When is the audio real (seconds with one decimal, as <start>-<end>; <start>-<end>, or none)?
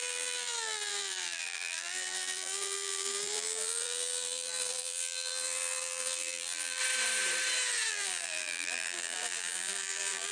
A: 6.8-7.9